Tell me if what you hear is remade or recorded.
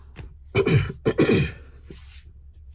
recorded